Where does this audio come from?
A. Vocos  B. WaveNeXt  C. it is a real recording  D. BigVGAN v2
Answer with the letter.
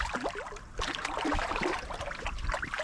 C